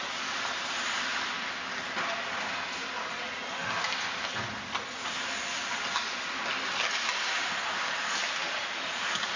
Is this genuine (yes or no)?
yes